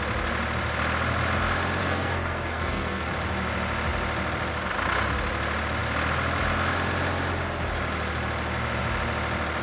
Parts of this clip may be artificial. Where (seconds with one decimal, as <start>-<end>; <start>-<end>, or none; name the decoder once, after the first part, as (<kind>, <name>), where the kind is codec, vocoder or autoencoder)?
1.8-3.1 (codec, SNAC)